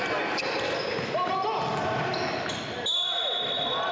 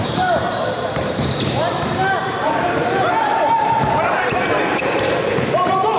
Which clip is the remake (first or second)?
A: second